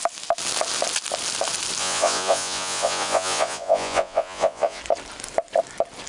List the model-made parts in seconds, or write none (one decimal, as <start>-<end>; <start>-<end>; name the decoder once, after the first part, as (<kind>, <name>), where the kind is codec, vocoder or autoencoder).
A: 1.8-4.8 (vocoder, Vocos)